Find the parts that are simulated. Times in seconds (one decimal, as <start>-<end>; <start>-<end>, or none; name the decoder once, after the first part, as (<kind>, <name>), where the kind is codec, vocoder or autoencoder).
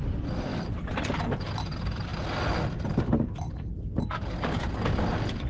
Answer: none